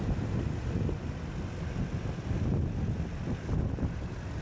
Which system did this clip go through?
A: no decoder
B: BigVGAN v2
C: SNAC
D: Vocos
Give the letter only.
A